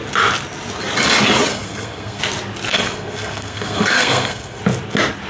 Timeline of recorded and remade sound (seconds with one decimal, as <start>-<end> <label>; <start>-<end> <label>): 0.0-1.5 recorded; 1.5-2.2 remade; 2.2-2.7 recorded; 2.7-4.6 remade; 4.6-5.3 recorded